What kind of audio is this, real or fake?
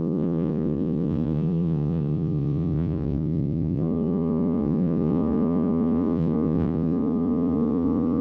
fake